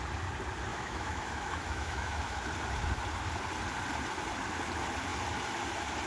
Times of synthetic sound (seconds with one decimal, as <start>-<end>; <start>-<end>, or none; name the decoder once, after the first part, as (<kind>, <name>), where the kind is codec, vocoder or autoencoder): 0.7-2.4 (autoencoder, DAC-VAE)